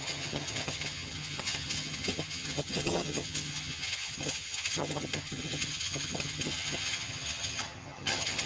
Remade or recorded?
remade